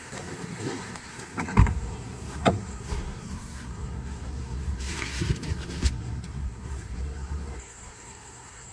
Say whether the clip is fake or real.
fake